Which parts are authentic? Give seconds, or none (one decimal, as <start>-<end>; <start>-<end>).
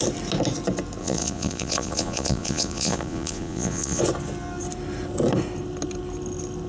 0.0-1.0; 4.0-6.7